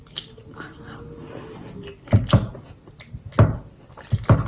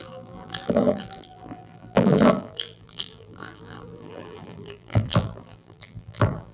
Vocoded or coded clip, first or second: second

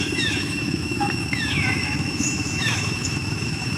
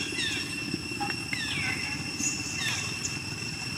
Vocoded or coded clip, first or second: first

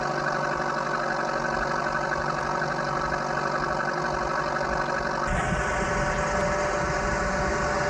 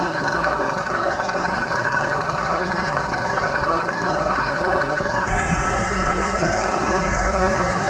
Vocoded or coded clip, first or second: second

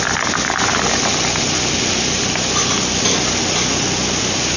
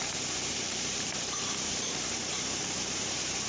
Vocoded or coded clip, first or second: second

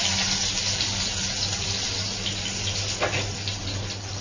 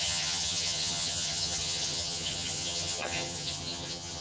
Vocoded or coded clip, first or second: second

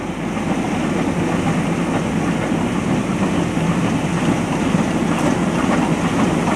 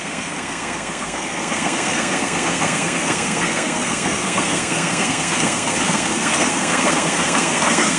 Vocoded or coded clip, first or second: second